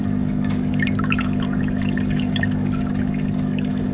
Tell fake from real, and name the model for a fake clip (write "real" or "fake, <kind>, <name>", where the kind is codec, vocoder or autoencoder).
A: fake, codec, DAC